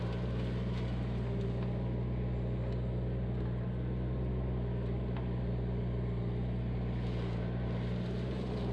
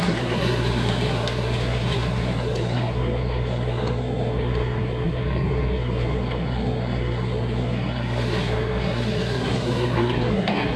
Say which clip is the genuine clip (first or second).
first